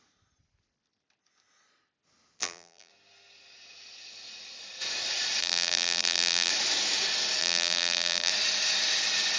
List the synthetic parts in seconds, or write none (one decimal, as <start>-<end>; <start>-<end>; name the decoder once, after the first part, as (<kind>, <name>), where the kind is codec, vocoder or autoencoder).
2.4-2.9 (vocoder, BigVGAN v2); 5.4-6.5; 7.4-8.3